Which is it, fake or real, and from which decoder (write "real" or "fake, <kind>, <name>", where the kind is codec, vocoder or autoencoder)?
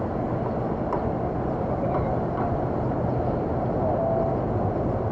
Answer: real